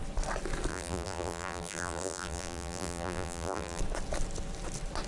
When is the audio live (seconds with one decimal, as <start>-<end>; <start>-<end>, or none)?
0.0-0.7; 3.8-5.1